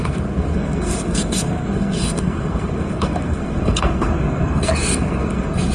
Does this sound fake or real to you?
fake